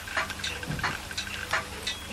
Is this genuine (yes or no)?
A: yes